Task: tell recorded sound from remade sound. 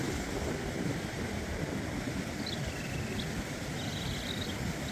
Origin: recorded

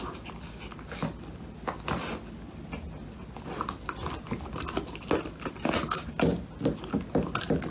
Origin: recorded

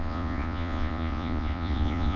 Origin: remade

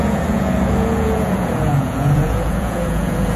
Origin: remade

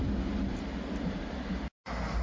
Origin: recorded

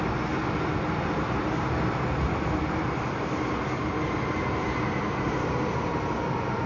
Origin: recorded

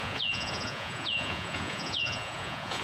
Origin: remade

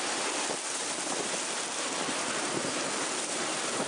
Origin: recorded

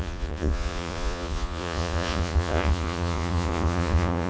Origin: remade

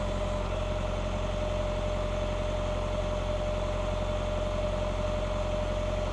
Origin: recorded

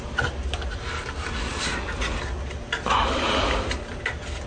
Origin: recorded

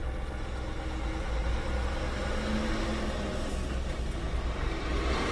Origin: recorded